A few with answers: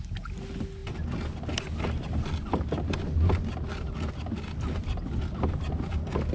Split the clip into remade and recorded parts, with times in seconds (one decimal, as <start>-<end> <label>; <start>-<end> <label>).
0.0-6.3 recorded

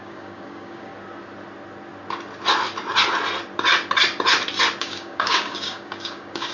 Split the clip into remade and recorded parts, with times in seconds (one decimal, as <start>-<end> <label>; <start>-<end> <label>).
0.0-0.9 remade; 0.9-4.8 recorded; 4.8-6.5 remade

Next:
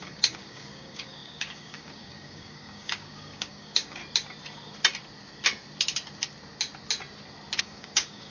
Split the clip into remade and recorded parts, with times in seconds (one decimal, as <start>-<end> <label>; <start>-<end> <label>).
0.0-4.0 remade; 4.0-7.6 recorded; 7.6-8.3 remade